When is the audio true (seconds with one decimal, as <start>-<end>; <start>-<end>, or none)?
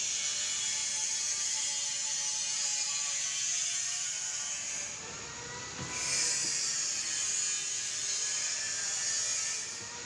0.0-10.1